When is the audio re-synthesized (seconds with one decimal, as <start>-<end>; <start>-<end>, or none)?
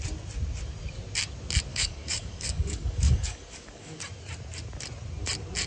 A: 1.7-4.0